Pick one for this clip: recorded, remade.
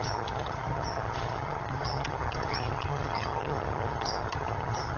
remade